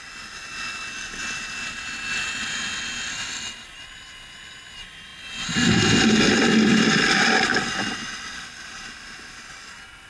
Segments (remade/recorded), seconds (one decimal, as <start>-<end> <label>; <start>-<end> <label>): 0.0-10.1 recorded